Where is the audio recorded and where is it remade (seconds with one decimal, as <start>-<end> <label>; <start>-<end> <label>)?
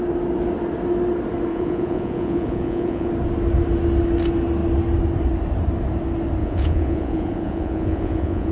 0.0-1.5 recorded; 1.5-3.1 remade; 3.1-6.4 recorded; 6.4-8.5 remade